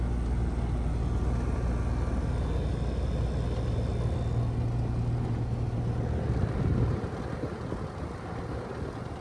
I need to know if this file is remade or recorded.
recorded